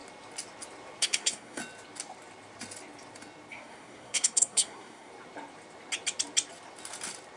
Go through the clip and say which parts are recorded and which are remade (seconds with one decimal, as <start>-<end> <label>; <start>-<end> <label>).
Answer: 0.0-1.0 recorded; 1.0-1.6 remade; 1.6-3.5 recorded; 3.5-5.1 remade; 5.1-7.4 recorded